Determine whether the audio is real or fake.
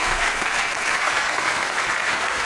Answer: fake